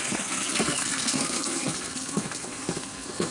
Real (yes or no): no